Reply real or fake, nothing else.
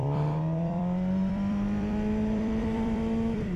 fake